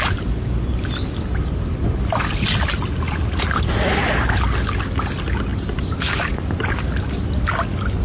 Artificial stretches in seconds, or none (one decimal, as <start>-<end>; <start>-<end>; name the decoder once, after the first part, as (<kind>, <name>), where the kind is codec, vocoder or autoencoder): none